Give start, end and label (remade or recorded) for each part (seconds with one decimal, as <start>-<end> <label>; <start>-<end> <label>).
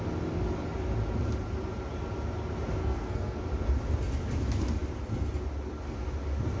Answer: 0.0-2.8 recorded; 2.8-3.4 remade; 3.4-6.6 recorded